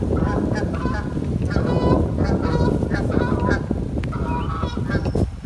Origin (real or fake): real